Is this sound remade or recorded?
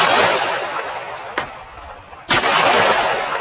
recorded